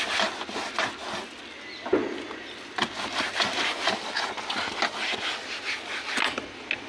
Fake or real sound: real